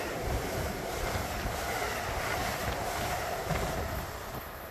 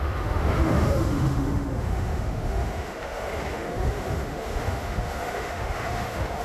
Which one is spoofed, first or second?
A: second